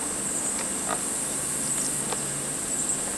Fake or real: real